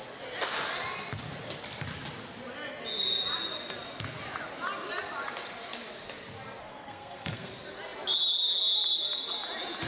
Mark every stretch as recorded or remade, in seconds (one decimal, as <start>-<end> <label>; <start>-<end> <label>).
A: 0.0-6.6 recorded; 6.6-7.5 remade; 7.5-9.9 recorded